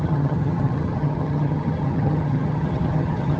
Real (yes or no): no